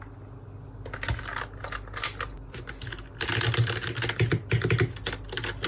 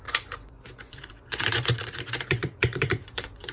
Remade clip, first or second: second